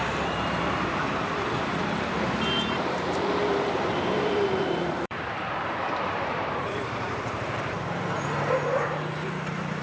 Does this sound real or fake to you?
fake